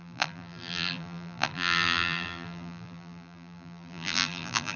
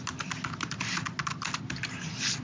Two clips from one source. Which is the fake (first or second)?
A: first